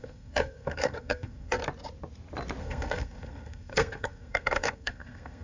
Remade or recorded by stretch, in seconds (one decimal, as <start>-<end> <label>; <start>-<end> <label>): 0.0-1.6 remade; 1.6-2.6 recorded; 2.6-5.4 remade